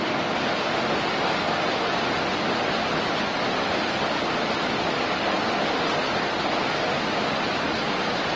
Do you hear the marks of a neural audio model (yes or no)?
no